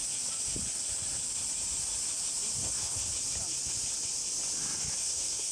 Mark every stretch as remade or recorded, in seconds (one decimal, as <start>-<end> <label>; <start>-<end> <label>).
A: 0.0-2.6 recorded; 2.6-3.1 remade; 3.1-5.0 recorded; 5.0-5.5 remade